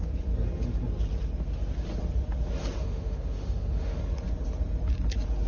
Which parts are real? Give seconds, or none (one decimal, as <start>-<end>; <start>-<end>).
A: 0.0-2.8; 4.0-5.5